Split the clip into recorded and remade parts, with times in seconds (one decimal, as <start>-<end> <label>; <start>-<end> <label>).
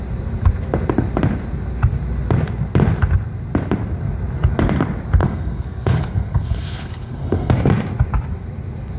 0.0-5.2 recorded; 5.2-7.5 remade; 7.5-9.0 recorded